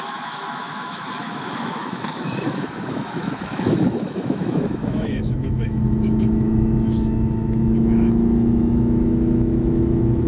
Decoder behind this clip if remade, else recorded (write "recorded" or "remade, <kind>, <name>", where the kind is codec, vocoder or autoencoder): remade, autoencoder, DAC-VAE